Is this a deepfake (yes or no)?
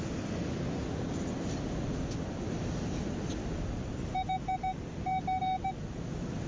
no